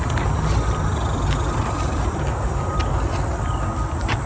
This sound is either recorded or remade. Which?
recorded